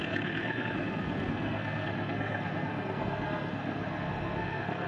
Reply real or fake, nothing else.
fake